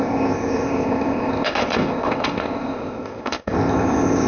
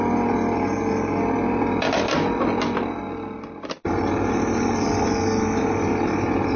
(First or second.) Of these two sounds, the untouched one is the second